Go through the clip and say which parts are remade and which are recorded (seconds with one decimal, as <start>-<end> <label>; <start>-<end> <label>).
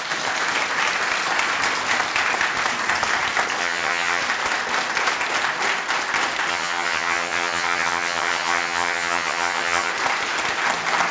0.0-3.6 recorded; 3.6-4.2 remade; 4.2-6.5 recorded; 6.5-9.9 remade; 9.9-11.1 recorded